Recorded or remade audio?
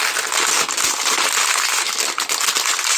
recorded